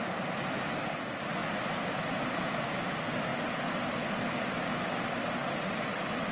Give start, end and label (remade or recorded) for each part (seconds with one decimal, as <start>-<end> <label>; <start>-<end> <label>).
0.0-6.3 recorded